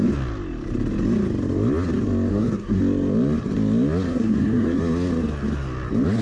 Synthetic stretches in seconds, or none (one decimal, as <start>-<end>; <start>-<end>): 2.3-2.8; 4.1-4.8